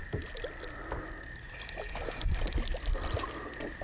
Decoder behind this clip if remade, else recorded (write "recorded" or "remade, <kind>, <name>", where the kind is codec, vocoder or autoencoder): recorded